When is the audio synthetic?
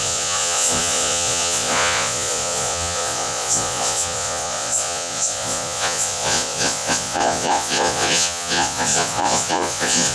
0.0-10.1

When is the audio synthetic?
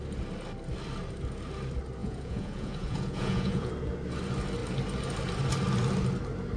2.0-3.7